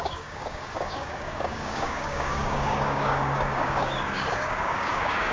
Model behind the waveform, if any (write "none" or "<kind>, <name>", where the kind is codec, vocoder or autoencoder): codec, DAC